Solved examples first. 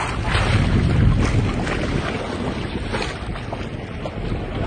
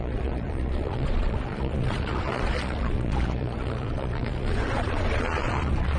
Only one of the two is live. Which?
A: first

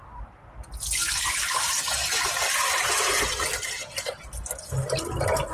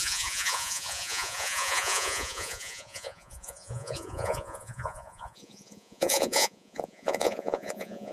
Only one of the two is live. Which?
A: first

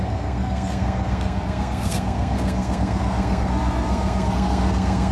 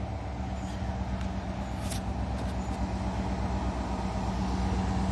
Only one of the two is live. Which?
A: second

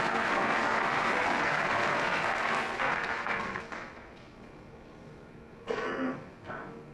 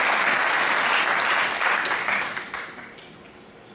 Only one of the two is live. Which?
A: second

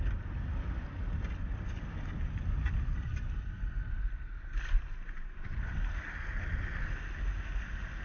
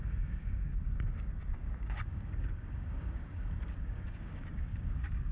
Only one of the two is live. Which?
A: first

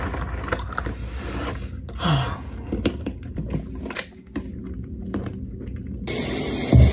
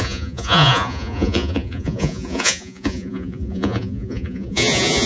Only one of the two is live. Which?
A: first